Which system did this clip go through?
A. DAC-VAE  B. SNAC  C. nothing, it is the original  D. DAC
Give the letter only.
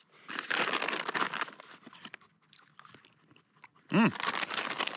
C